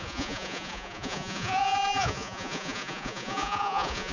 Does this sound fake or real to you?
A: fake